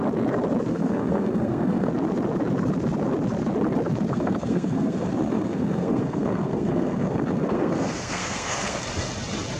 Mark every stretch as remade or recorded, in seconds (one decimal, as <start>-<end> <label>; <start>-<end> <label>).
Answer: 0.0-0.7 recorded; 0.7-1.9 remade; 1.9-4.1 recorded; 4.1-8.8 remade; 8.8-9.6 recorded